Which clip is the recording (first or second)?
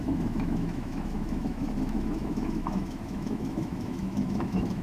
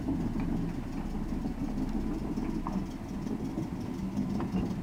second